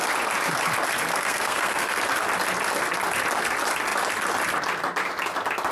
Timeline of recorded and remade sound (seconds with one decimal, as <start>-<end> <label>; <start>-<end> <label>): 0.0-1.1 recorded; 1.1-2.0 remade; 2.0-5.7 recorded